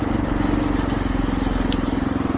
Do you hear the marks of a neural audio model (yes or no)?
no